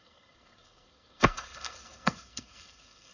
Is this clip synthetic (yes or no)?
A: yes